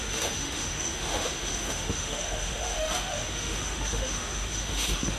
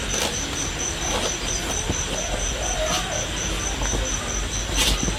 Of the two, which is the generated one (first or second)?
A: first